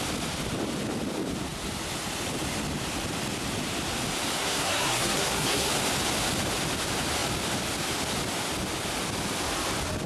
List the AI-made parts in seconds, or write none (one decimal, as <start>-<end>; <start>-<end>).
4.4-5.7